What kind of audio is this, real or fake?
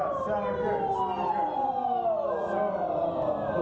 real